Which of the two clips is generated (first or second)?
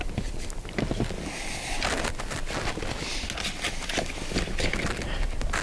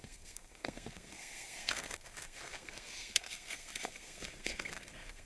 second